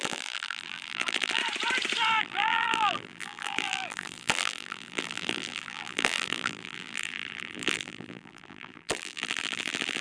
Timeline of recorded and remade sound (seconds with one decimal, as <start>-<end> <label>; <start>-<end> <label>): 0.0-1.4 remade; 1.4-2.2 recorded; 2.2-10.0 remade